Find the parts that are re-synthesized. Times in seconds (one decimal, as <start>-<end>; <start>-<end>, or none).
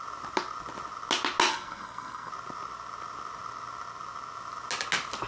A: 1.5-2.3